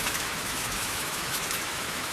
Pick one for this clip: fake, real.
fake